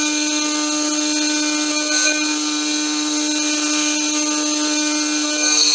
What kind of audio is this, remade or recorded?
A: recorded